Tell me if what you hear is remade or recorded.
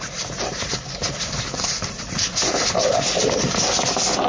recorded